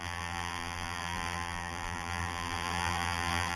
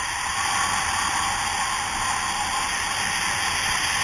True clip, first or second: second